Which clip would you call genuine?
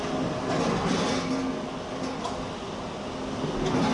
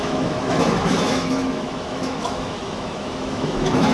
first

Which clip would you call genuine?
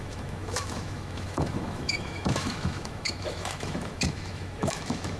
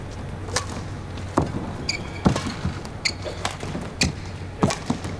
second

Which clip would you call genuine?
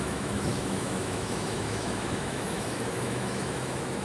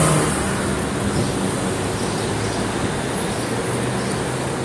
second